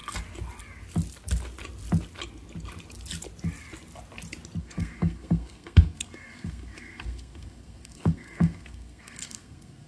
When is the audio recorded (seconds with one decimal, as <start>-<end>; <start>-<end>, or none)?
0.0-4.6